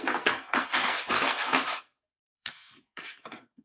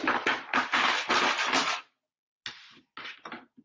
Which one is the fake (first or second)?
first